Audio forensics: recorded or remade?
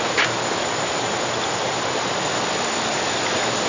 recorded